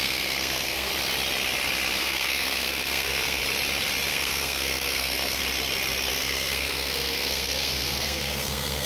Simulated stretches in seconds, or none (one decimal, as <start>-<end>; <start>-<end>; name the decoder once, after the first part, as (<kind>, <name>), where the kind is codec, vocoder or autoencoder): 0.0-0.9 (codec, SNAC); 2.0-3.4; 4.1-5.4; 6.1-8.9